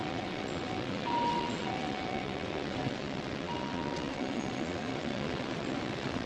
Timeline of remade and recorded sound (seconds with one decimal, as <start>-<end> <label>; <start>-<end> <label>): 0.0-6.3 remade

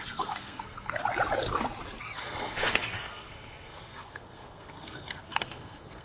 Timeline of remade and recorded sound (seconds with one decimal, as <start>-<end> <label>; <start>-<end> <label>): 0.0-1.0 remade; 1.0-2.2 recorded; 2.2-6.0 remade

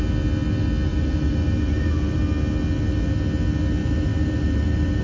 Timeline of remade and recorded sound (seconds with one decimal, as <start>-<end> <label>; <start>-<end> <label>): 0.0-0.9 recorded; 0.9-2.2 remade; 2.2-3.8 recorded; 3.8-5.0 remade

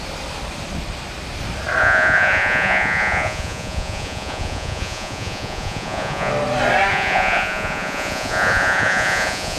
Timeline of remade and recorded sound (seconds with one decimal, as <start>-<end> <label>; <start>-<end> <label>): 0.0-1.8 recorded; 1.8-6.3 remade; 6.3-6.9 recorded; 6.9-9.6 remade

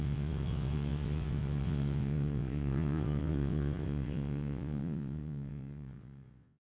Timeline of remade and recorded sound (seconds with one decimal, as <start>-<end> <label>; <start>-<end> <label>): 0.0-6.7 remade

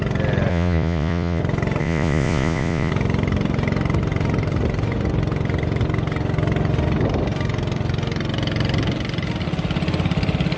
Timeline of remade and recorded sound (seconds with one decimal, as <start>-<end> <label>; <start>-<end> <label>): 0.0-0.5 recorded; 0.5-1.4 remade; 1.4-1.8 recorded; 1.8-2.9 remade; 2.9-10.6 recorded